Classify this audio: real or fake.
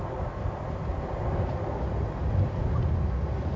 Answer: real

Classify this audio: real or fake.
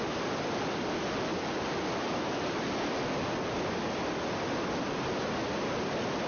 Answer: real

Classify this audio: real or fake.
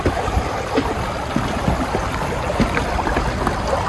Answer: real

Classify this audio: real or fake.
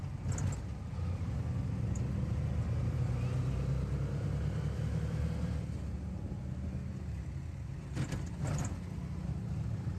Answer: real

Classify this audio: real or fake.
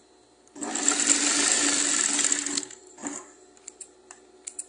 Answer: real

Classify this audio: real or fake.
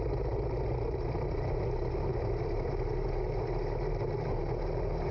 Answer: real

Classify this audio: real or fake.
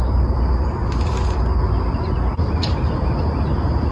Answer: real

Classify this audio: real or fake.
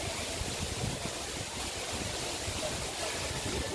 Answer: real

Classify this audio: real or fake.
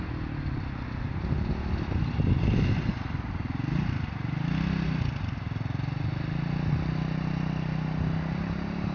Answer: real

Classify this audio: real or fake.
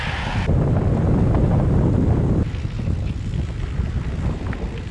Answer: real